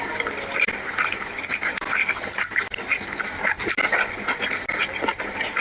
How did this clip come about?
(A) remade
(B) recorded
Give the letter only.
B